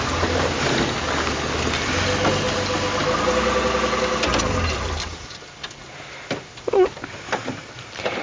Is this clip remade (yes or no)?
no